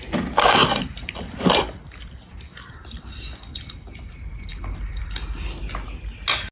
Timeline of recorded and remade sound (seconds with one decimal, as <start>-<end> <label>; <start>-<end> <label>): 0.0-0.6 recorded; 0.6-4.1 remade; 4.1-4.5 recorded; 4.5-5.2 remade; 5.2-6.5 recorded

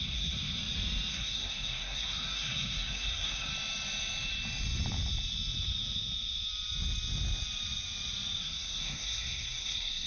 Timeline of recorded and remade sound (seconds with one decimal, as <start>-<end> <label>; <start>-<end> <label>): 0.0-0.6 remade; 0.6-1.1 recorded; 1.1-3.5 remade; 3.5-8.4 recorded; 8.4-10.1 remade

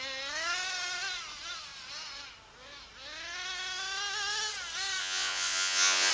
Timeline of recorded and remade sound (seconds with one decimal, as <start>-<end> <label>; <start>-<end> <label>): 0.0-5.0 recorded; 5.0-6.1 remade

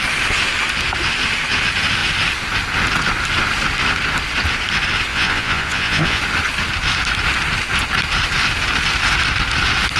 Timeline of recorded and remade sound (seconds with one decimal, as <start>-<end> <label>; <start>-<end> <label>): 0.0-5.1 recorded; 5.1-6.2 remade; 6.2-10.0 recorded